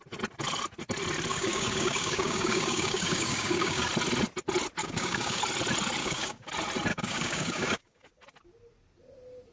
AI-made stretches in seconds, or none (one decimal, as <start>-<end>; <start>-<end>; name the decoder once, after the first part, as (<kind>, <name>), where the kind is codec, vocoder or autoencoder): 1.3-3.9 (codec, DAC); 4.8-5.4; 6.0-6.5; 6.9-8.1